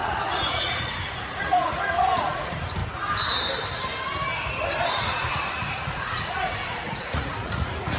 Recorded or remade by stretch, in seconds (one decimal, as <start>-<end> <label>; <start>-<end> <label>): 0.0-2.8 remade; 2.8-4.9 recorded; 4.9-8.0 remade